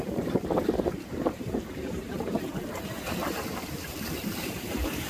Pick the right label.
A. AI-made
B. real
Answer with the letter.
A